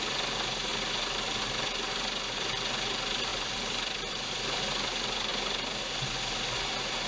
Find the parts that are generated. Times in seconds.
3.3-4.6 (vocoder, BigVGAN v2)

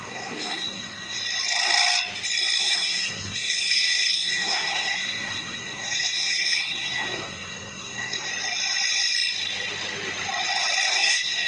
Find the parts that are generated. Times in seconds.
0.0-1.2 (codec, SNAC); 2.6-8.3; 10.9-11.5

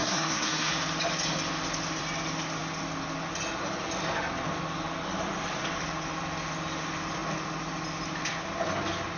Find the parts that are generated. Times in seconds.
0.0-0.7 (codec, SNAC)

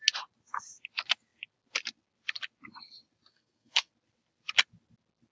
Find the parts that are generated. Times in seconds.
3.3-3.9 (codec, SNAC)

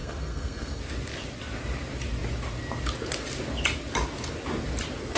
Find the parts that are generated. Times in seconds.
0.0-0.8 (codec, SNAC)

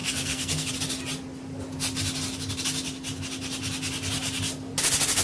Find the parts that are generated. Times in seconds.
0.0-0.7 (codec, SNAC)

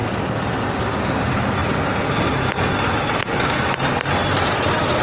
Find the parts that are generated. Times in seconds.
none